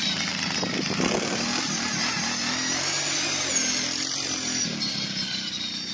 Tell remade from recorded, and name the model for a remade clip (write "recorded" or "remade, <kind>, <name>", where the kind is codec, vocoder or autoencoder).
recorded